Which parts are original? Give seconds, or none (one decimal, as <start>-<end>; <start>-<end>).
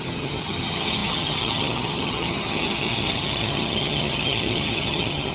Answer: none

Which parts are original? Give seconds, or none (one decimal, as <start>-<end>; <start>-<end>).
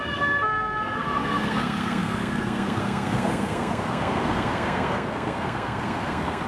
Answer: none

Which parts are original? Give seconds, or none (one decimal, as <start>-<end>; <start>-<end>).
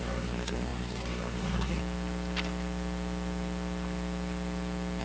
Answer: 1.8-5.0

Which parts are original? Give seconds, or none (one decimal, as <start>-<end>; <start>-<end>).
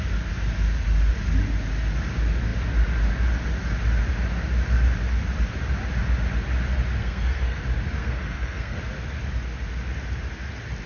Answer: 0.0-7.0; 7.6-8.0; 8.8-10.9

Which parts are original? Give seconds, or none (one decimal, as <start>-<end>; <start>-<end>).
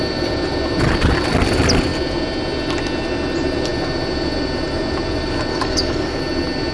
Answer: 0.0-5.5; 6.2-6.7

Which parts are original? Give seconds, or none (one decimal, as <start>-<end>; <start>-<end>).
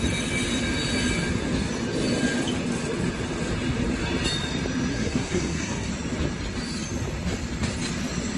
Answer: 0.0-4.9; 5.9-8.4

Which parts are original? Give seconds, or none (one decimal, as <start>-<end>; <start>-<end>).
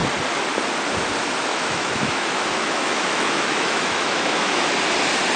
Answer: 0.0-1.5; 4.7-5.4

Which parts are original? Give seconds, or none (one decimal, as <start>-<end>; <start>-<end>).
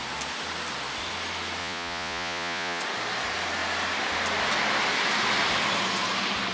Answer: 0.0-1.6; 2.8-6.5